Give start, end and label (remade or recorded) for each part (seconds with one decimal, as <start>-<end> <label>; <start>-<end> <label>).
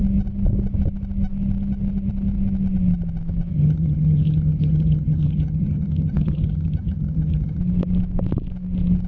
0.0-3.5 recorded; 3.5-7.6 remade; 7.6-9.1 recorded